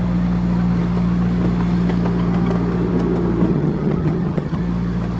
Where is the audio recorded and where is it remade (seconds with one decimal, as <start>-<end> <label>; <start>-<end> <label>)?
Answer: 0.0-3.5 recorded; 3.5-4.6 remade; 4.6-5.2 recorded